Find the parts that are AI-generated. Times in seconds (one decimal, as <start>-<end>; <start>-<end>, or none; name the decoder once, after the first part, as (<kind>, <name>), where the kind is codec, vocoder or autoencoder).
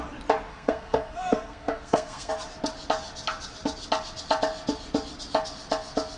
0.5-2.3 (codec, SNAC)